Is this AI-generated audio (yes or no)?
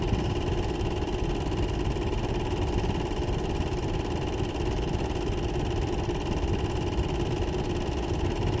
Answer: no